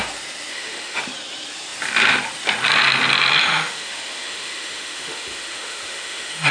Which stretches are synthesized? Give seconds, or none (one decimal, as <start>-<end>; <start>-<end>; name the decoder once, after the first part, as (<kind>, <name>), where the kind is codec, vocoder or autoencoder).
0.5-1.0 (autoencoder, DAC-VAE); 3.4-6.5